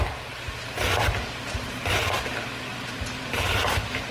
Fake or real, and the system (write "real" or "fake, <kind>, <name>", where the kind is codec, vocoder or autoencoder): real